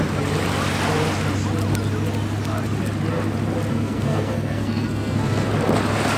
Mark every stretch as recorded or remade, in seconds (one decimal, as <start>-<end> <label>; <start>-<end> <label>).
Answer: 0.0-3.7 recorded; 3.7-5.5 remade; 5.5-6.2 recorded